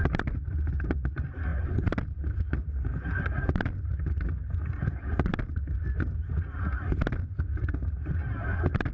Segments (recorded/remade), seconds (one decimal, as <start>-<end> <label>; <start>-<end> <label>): 0.0-8.9 recorded